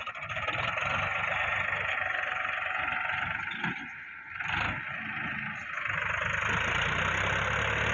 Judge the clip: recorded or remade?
recorded